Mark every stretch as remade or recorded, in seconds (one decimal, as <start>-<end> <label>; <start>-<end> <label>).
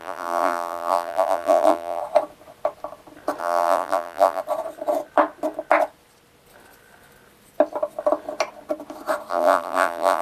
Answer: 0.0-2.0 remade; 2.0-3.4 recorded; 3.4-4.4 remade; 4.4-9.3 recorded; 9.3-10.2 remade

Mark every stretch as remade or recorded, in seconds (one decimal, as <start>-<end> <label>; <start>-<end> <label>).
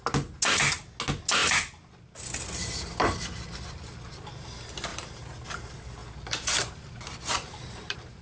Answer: 0.0-4.9 recorded; 4.9-5.5 remade; 5.5-7.5 recorded; 7.5-8.2 remade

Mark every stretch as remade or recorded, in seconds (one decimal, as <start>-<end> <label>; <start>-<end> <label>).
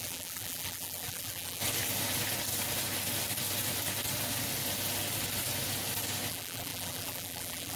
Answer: 0.0-1.6 remade; 1.6-6.3 recorded; 6.3-7.8 remade